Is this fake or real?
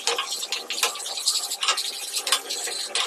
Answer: real